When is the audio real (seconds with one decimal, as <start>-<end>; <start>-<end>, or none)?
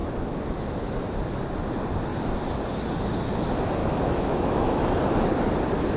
0.9-3.8; 4.8-6.0